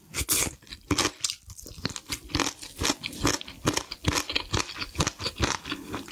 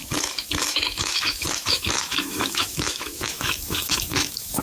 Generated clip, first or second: second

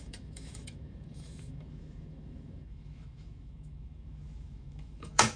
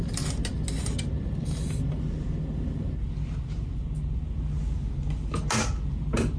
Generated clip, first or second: first